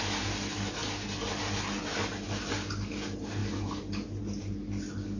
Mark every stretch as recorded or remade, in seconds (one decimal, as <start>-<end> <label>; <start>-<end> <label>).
0.0-5.2 recorded